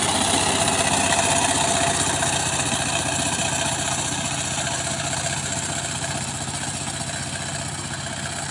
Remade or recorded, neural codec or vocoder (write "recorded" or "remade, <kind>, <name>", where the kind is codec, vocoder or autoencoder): recorded